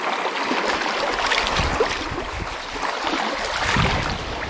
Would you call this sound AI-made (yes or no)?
no